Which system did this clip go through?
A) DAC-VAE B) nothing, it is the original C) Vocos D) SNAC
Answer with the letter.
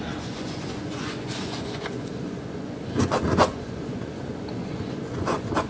C